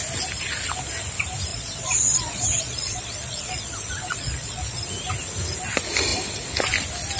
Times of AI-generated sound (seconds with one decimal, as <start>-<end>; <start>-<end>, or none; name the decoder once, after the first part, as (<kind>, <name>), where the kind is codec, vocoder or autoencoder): 1.5-4.8 (vocoder, Vocos)